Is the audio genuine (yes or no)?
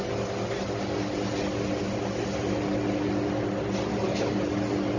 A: yes